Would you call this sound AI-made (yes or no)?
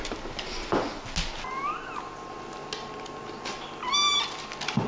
no